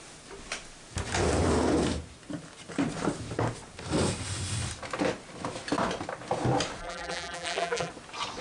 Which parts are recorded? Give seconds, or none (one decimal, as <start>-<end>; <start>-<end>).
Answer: 0.0-6.8; 7.9-8.4